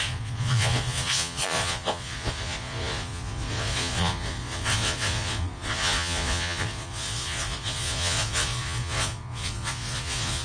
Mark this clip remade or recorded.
remade